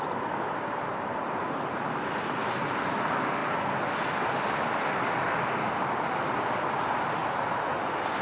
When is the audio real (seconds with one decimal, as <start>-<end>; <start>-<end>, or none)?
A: 0.0-8.2